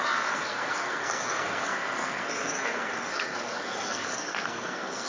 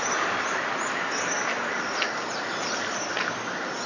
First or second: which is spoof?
first